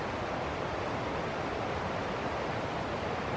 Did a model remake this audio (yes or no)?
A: yes